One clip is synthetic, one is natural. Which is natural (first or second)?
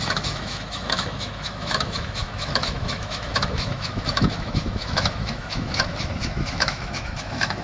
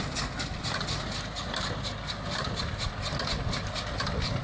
second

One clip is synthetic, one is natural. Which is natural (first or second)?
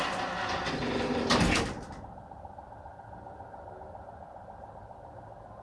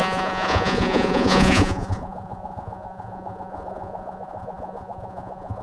first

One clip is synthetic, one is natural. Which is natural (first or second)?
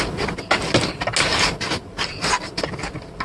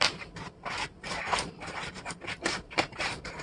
first